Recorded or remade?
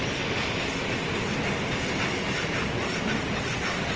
recorded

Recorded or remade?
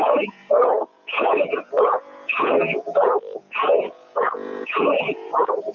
remade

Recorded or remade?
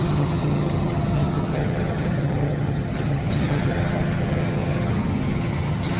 remade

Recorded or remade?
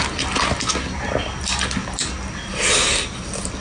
recorded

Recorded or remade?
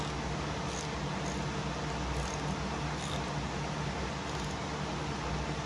recorded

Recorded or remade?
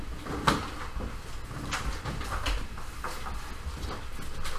recorded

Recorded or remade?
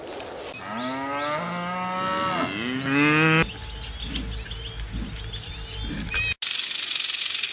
recorded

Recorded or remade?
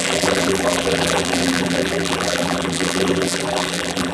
remade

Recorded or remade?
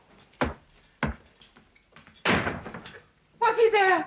recorded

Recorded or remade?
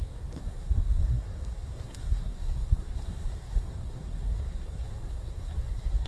remade